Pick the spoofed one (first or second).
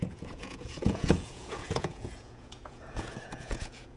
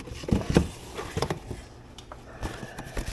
first